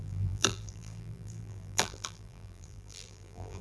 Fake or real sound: fake